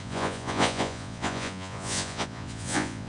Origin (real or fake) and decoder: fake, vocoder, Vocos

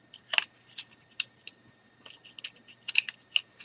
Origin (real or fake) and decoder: real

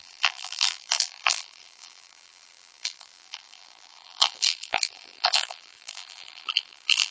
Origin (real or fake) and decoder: fake, vocoder, BigVGAN v2